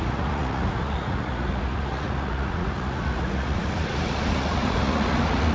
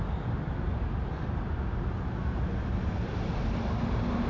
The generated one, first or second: first